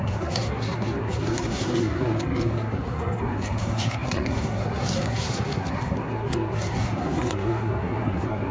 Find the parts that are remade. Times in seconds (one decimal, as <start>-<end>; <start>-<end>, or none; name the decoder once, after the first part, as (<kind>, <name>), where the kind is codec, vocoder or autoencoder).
0.0-8.5 (codec, SNAC)

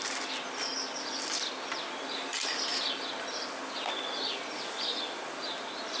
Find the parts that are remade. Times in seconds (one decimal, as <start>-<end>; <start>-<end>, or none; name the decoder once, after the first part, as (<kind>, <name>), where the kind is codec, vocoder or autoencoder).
none

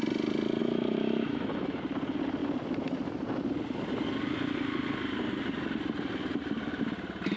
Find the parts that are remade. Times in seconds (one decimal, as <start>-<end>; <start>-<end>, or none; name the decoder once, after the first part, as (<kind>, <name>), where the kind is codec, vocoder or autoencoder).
0.6-1.8 (autoencoder, DAC-VAE)

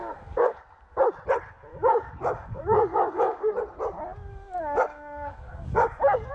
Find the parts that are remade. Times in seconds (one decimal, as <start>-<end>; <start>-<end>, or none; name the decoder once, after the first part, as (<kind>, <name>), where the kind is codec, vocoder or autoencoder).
0.0-0.6 (codec, DAC); 1.7-3.5; 4.3-6.3

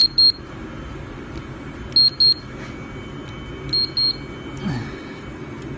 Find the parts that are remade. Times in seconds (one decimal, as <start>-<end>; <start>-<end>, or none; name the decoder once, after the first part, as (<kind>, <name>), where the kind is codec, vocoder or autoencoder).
none

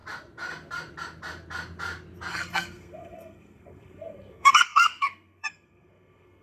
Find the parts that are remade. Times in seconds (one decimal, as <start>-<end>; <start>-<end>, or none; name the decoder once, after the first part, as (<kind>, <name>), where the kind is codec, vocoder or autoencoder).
2.3-6.4 (codec, SNAC)

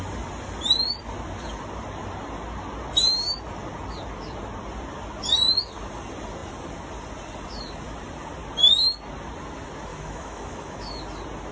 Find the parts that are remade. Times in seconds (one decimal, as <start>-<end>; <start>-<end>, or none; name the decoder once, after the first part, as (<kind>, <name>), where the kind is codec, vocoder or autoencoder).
9.9-11.0 (autoencoder, DAC-VAE)